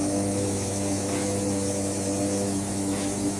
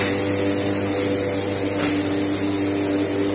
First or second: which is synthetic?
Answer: first